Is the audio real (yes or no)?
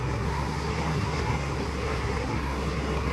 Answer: no